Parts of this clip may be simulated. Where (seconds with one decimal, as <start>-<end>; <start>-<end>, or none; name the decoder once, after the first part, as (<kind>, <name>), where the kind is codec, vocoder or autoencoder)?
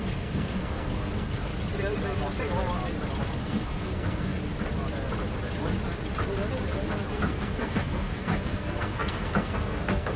0.0-1.5 (codec, SNAC); 3.4-4.4; 7.1-10.2